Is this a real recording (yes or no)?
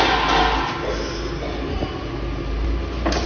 yes